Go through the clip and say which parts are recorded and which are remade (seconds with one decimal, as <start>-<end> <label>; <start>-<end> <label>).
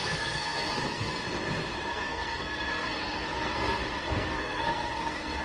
0.0-1.2 remade; 1.2-1.9 recorded; 1.9-5.4 remade